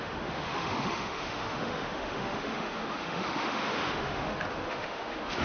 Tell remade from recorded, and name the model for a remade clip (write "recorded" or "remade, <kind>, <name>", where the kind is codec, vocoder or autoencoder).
remade, autoencoder, DAC-VAE